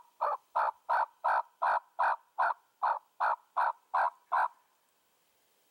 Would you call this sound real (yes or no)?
yes